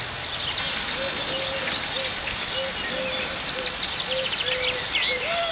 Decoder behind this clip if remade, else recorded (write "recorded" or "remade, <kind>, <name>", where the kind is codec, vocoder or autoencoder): recorded